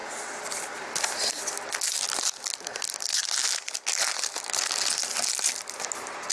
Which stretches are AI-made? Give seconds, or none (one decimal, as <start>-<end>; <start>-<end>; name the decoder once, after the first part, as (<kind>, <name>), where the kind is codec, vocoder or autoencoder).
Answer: none